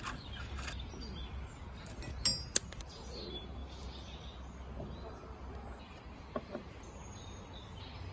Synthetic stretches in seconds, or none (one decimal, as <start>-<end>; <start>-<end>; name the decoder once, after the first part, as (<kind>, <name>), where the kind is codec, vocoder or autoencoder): none